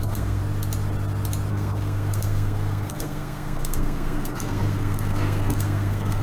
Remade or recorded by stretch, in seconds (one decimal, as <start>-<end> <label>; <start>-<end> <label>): 0.0-0.4 remade; 0.4-1.5 recorded; 1.5-6.2 remade